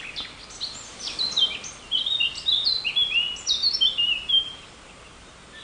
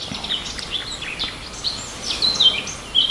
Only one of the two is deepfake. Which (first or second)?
second